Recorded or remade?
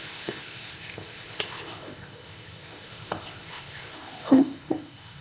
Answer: remade